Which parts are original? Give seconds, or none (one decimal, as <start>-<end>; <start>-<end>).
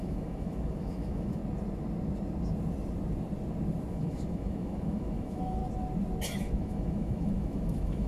1.4-3.9; 5.6-6.4